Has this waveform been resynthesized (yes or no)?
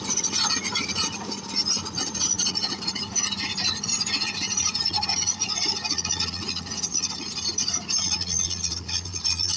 yes